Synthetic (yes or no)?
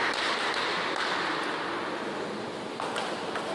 no